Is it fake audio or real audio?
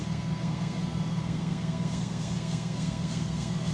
fake